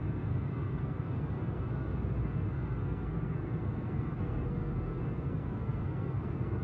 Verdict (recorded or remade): remade